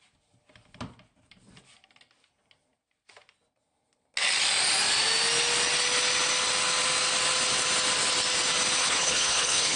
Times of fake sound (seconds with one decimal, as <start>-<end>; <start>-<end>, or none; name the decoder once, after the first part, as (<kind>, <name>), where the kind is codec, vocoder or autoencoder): 8.8-9.8 (codec, HILCodec)